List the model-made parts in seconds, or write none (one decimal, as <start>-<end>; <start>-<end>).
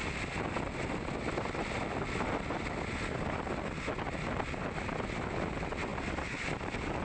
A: none